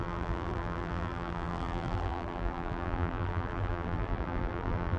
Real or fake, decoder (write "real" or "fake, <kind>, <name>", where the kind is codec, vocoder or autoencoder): fake, vocoder, BigVGAN v2